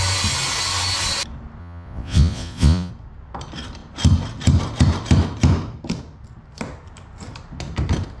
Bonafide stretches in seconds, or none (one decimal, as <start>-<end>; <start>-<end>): 0.0-1.6; 2.9-8.2